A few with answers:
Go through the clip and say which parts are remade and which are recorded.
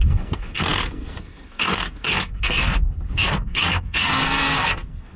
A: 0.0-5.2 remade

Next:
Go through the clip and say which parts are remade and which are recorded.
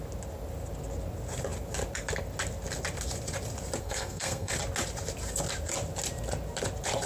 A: 0.0-3.8 recorded; 3.8-4.5 remade; 4.5-7.1 recorded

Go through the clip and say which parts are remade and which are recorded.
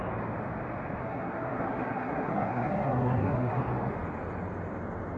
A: 0.0-1.0 recorded; 1.0-3.6 remade; 3.6-5.2 recorded